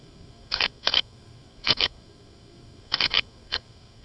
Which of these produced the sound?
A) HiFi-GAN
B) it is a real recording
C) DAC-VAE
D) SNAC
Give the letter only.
D